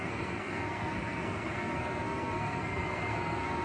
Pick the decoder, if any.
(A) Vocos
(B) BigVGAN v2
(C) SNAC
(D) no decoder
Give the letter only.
C